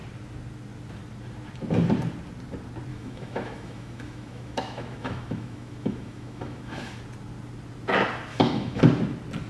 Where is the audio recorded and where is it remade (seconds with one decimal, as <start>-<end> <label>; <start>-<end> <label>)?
0.0-2.9 recorded; 2.9-7.0 remade; 7.0-8.3 recorded; 8.3-8.8 remade; 8.8-9.5 recorded